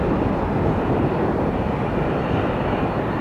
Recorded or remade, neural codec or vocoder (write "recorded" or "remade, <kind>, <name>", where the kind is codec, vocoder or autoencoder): recorded